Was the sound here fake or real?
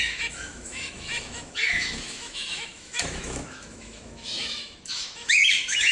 fake